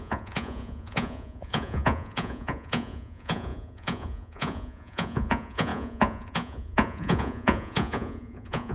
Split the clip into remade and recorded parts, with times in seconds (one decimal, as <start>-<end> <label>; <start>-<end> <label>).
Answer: 0.0-8.7 remade